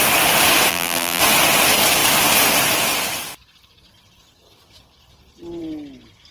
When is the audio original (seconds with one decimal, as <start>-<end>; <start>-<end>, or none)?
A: 0.0-0.7; 1.2-6.3